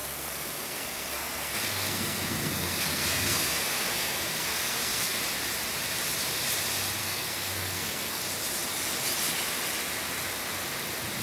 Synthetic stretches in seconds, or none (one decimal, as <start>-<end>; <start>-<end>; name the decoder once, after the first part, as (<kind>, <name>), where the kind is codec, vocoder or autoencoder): 0.0-5.2 (codec, SNAC); 7.0-8.2